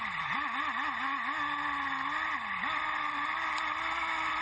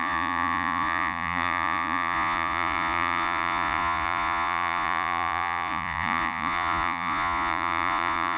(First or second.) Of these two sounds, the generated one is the second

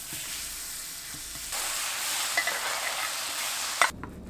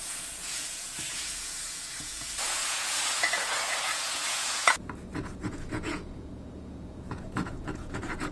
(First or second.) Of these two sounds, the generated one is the second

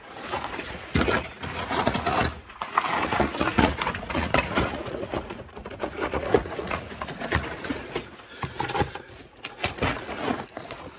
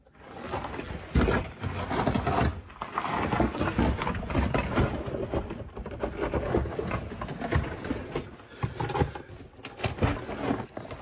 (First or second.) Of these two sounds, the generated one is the first